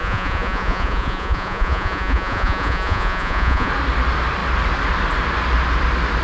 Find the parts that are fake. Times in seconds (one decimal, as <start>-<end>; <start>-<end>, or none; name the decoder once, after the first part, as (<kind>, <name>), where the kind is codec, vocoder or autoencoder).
0.0-3.7 (vocoder, Vocos)